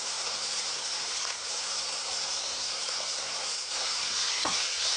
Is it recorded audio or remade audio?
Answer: remade